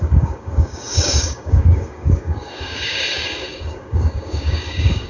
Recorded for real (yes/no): no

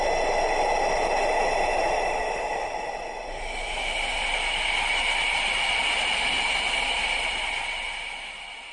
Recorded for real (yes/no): yes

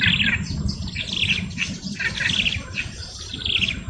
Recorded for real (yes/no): yes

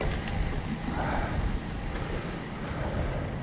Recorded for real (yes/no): yes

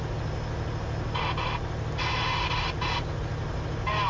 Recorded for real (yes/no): yes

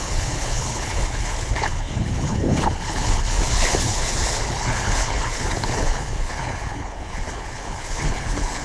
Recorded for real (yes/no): no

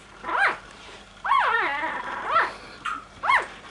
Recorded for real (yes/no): no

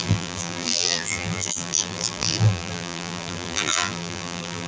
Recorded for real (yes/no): no